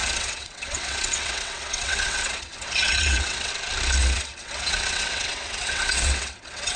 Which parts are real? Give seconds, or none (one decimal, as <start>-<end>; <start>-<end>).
3.5-4.0